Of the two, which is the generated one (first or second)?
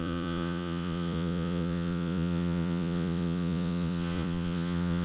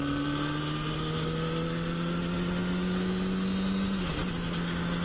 first